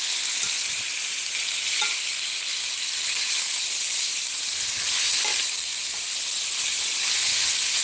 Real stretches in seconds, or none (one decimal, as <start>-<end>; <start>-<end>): 0.0-7.8